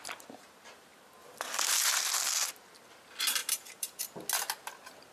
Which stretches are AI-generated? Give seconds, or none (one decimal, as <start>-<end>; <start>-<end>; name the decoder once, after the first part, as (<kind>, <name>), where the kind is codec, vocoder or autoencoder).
1.2-1.9 (vocoder, BigVGAN v2); 3.4-4.0